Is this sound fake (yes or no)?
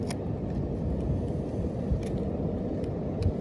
no